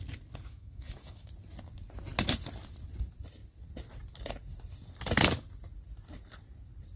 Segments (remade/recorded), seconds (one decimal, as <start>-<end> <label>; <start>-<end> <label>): 0.0-0.5 recorded; 0.5-1.3 remade; 1.3-7.0 recorded